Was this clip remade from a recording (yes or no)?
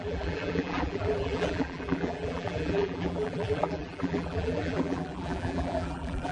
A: yes